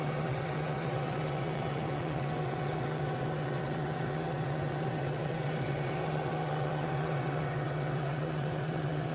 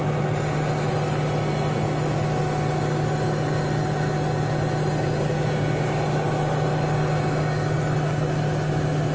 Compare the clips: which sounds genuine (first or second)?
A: second